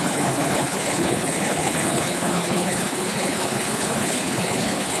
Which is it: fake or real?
fake